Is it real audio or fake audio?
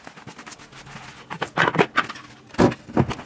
real